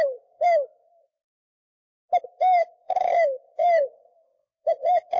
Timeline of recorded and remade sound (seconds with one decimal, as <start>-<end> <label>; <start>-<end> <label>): 0.0-1.0 remade; 1.0-2.4 recorded; 2.4-5.2 remade

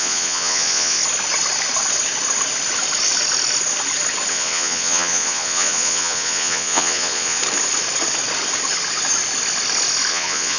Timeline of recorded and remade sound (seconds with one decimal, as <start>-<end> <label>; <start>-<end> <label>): 0.0-1.0 remade; 1.0-4.3 recorded; 4.3-7.4 remade; 7.4-10.1 recorded; 10.1-10.6 remade